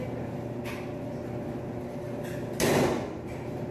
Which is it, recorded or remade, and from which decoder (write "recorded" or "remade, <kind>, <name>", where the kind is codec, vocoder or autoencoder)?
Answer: recorded